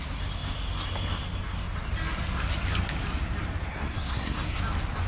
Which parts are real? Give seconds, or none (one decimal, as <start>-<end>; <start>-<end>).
0.0-3.7; 4.6-5.1